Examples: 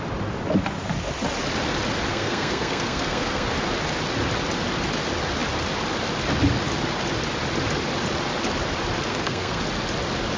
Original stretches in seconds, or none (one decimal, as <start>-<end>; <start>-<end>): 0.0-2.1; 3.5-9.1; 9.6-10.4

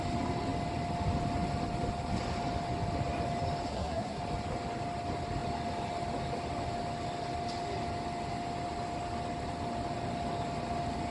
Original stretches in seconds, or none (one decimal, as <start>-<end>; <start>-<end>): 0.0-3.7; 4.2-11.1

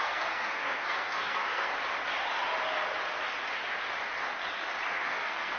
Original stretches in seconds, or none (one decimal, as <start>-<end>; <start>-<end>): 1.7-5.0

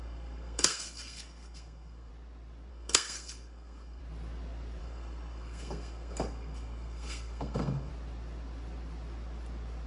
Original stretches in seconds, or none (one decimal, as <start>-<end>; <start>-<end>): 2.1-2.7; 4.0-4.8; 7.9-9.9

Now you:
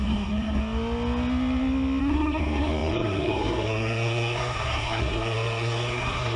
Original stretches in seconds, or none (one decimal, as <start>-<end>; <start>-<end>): 0.6-2.0

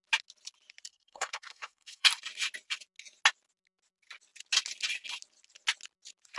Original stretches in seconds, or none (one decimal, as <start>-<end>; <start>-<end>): 0.0-0.9; 2.1-6.4

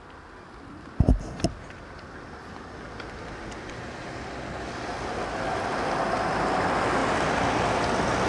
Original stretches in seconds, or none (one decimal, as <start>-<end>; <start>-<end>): 0.0-8.3

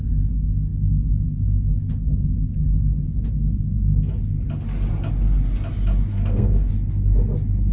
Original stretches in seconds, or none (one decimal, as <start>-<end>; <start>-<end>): 0.0-6.1; 6.7-7.7